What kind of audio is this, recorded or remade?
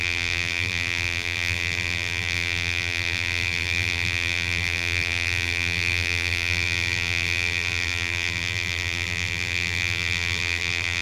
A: remade